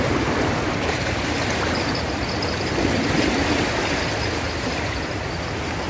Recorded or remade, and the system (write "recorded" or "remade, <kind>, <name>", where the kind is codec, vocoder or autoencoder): recorded